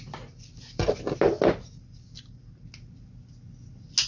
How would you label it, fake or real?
real